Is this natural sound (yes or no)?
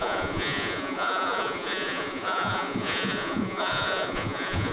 no